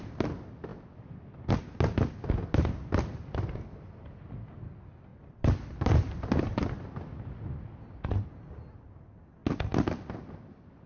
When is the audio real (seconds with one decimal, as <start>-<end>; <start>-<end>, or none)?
0.0-5.1; 6.8-10.9